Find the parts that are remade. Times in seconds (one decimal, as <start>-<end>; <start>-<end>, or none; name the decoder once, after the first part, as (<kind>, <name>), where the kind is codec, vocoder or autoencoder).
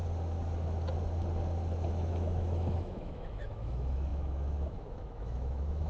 1.9-5.9 (autoencoder, DAC-VAE)